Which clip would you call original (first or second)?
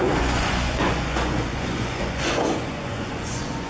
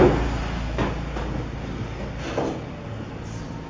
second